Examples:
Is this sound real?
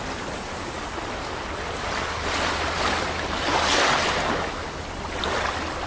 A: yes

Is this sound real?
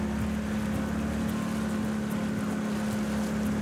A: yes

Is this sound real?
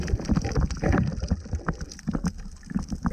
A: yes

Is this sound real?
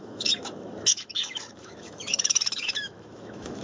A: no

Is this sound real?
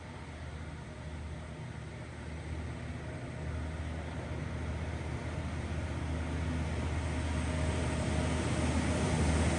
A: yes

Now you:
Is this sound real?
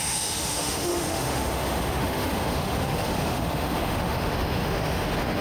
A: no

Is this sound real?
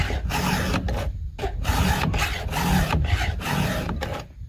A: yes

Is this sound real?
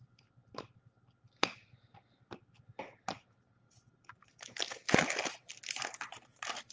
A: yes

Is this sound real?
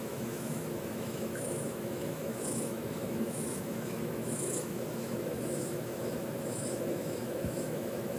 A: no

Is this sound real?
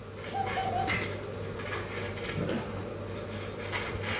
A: yes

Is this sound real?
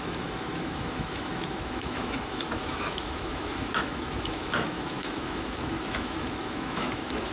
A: no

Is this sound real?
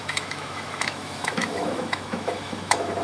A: no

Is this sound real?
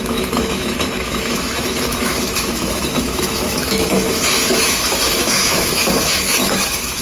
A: no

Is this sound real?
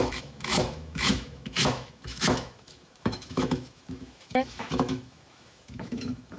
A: no